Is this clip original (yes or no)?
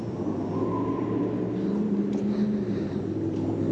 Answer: yes